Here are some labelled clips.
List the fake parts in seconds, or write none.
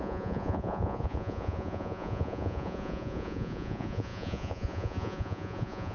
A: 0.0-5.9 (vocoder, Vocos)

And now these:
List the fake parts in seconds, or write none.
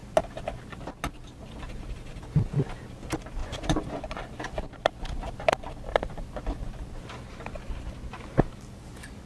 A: 3.4-4.2 (vocoder, Vocos)